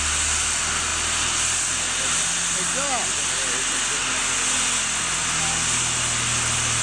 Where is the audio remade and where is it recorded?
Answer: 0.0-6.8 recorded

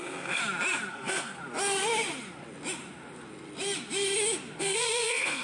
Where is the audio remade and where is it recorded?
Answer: 0.0-0.4 remade; 0.4-0.9 recorded; 0.9-1.4 remade; 1.4-4.6 recorded; 4.6-5.4 remade